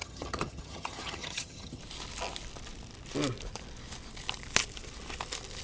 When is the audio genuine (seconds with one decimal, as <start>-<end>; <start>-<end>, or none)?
1.8-5.6